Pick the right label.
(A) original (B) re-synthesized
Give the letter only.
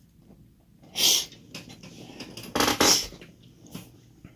A